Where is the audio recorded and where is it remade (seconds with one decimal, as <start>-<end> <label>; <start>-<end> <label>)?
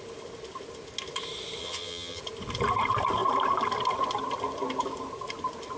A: 0.0-1.6 recorded; 1.6-2.2 remade; 2.2-5.8 recorded